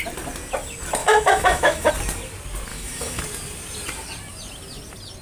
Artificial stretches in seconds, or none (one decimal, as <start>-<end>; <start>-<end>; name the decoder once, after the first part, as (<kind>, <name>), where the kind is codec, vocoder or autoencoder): 1.0-1.9 (autoencoder, DAC-VAE); 2.7-3.2